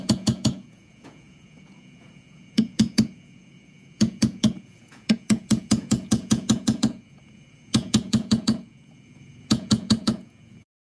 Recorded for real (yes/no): no